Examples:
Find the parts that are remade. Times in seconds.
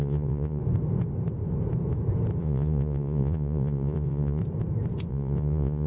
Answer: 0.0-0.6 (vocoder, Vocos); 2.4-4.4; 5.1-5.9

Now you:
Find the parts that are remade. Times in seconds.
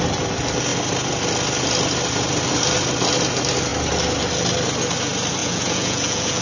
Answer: 5.4-6.4 (vocoder, Vocos)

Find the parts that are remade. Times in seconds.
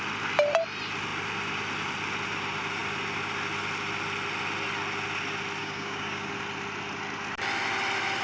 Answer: 5.6-6.3 (codec, DAC)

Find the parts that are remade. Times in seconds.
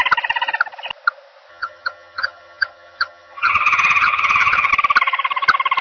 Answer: 1.5-4.7 (vocoder, HiFi-GAN)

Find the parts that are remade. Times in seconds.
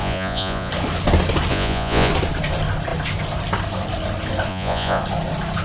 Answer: 0.0-0.7 (vocoder, Vocos); 1.5-2.1; 4.5-5.0